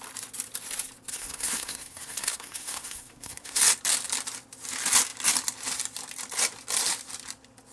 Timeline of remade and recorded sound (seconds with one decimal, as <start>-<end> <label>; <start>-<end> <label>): 0.0-1.1 recorded; 1.1-3.6 remade; 3.6-7.7 recorded

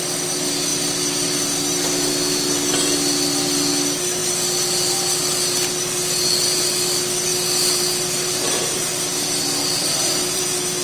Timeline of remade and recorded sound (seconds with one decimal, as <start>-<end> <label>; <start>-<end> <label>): 0.0-9.6 recorded; 9.6-10.4 remade; 10.4-10.8 recorded

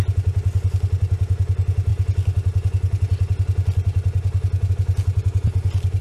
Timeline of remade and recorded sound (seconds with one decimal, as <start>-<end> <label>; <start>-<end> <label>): 0.0-6.0 recorded

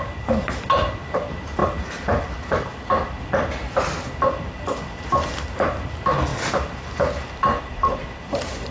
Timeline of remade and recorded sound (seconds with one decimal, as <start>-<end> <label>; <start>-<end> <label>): 0.0-8.7 recorded